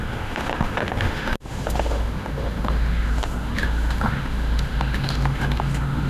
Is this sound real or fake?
fake